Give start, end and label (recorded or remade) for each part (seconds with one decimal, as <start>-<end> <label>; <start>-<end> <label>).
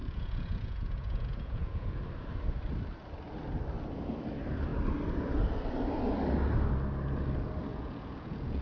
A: 0.0-2.0 remade; 2.0-7.7 recorded; 7.7-8.6 remade